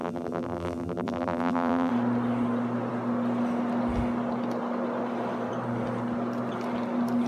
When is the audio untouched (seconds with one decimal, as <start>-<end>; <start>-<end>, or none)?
1.9-7.3